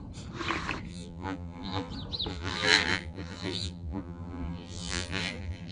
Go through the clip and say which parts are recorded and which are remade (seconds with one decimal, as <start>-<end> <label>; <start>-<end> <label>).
0.0-0.9 recorded; 0.9-1.9 remade; 1.9-2.3 recorded; 2.3-5.7 remade